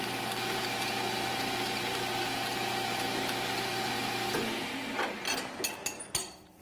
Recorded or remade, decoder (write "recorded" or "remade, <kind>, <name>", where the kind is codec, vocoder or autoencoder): recorded